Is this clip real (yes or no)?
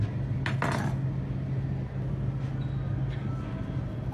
yes